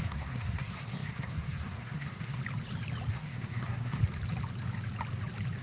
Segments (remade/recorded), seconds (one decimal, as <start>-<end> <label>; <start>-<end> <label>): 0.0-2.4 remade; 2.4-3.1 recorded; 3.1-4.0 remade; 4.0-5.6 recorded